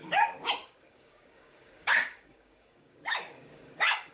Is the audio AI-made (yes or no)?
yes